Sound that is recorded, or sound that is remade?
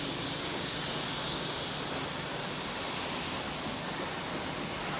recorded